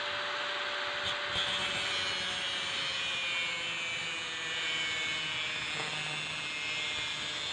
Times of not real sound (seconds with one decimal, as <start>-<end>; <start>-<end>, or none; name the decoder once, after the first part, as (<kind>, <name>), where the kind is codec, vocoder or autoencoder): none